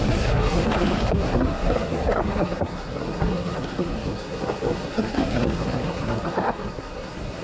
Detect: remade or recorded remade